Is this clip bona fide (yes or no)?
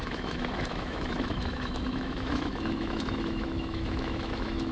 no